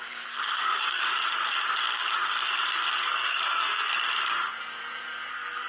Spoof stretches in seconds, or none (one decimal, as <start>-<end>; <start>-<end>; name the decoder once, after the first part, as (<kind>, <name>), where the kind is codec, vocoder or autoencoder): 0.0-1.0 (codec, SNAC); 3.0-3.9; 5.3-5.7